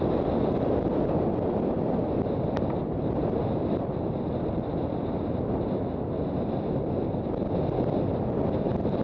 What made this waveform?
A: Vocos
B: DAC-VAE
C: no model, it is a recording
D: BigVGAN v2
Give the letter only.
C